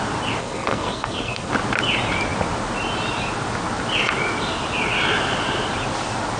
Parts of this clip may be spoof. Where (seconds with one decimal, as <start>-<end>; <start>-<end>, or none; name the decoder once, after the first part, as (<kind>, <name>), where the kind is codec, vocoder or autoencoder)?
0.4-1.5 (codec, SNAC)